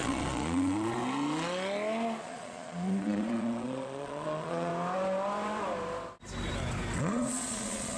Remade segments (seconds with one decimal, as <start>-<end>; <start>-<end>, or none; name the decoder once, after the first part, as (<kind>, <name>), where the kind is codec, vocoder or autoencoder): 0.0-1.0 (vocoder, Vocos); 2.2-4.7; 7.0-8.0